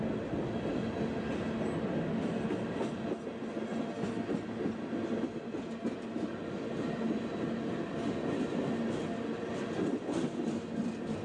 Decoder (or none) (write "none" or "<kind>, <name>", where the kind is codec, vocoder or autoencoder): none